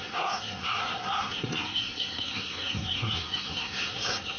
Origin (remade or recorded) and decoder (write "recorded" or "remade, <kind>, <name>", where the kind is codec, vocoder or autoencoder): remade, codec, SNAC